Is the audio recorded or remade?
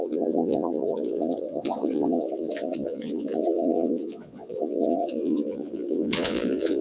remade